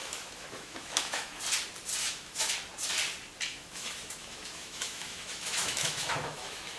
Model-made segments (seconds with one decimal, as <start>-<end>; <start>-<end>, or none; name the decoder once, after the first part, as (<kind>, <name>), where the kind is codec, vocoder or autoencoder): 0.0-1.4 (autoencoder, DAC-VAE); 2.0-2.5; 3.5-6.8